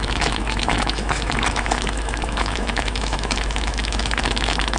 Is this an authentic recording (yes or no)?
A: no